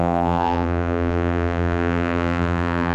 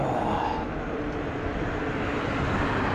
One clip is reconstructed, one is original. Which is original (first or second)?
second